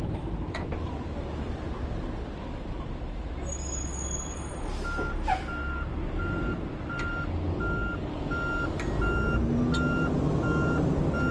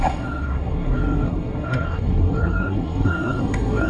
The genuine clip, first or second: first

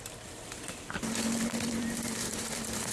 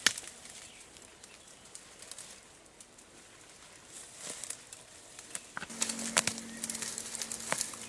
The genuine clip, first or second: second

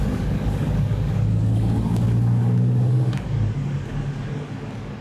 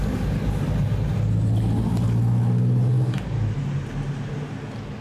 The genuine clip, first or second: second